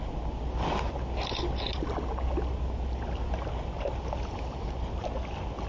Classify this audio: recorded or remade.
recorded